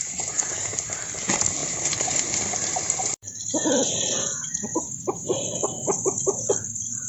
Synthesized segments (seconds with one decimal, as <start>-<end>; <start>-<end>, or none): 0.0-7.1